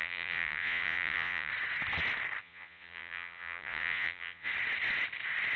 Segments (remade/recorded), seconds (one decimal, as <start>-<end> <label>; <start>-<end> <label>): 0.0-1.5 remade; 1.5-2.4 recorded; 2.4-4.5 remade; 4.5-5.6 recorded